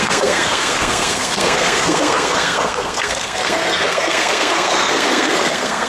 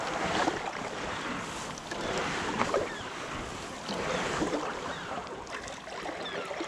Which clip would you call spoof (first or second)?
first